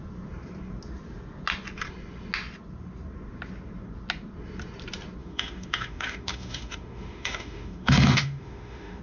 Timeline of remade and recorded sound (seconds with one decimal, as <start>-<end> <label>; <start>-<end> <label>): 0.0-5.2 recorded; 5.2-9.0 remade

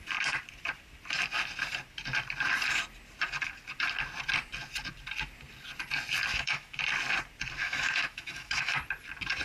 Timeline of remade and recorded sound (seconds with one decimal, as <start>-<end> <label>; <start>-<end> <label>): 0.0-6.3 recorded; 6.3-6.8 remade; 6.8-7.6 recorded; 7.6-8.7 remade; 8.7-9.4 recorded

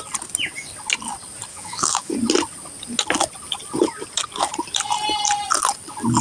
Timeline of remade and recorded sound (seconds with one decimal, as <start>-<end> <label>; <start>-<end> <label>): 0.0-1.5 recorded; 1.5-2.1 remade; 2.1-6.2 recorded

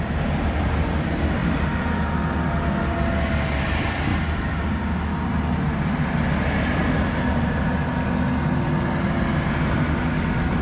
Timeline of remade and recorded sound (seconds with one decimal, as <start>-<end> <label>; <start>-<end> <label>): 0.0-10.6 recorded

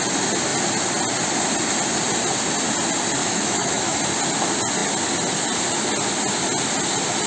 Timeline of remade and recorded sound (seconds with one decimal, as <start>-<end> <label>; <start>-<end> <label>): 0.0-3.2 recorded; 3.2-4.0 remade; 4.0-7.3 recorded